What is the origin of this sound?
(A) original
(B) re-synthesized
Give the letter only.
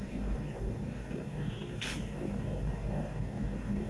B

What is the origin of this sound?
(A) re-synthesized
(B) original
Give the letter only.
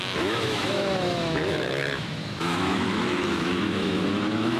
A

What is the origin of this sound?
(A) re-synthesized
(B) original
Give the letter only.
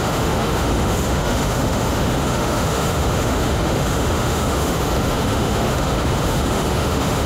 A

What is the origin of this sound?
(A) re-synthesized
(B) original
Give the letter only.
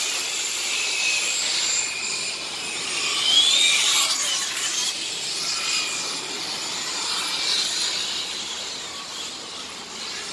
B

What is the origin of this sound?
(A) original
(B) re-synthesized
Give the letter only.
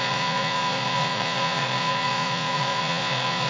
B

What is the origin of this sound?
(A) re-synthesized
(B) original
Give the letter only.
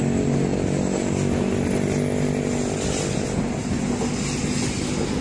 B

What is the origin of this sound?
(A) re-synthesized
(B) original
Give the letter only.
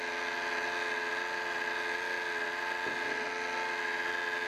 B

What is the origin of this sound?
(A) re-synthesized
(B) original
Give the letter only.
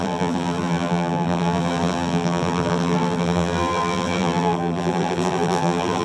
A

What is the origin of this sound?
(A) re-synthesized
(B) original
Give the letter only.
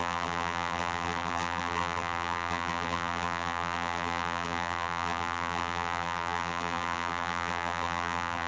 A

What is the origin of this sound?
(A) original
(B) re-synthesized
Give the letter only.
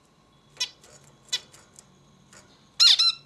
A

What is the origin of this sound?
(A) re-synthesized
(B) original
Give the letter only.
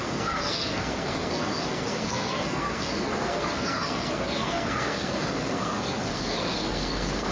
A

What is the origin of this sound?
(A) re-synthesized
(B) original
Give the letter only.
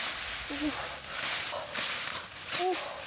B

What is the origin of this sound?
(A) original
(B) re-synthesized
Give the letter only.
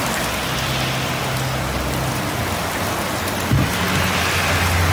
A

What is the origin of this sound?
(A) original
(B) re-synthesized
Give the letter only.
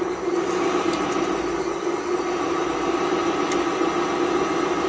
A